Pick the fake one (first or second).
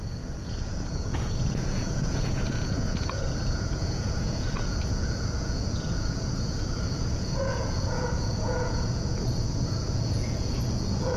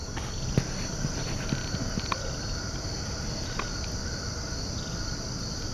first